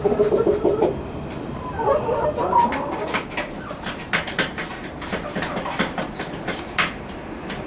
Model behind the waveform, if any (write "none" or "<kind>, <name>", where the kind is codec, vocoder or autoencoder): vocoder, BigVGAN v2